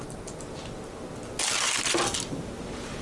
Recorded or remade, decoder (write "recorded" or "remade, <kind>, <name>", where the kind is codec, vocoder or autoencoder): recorded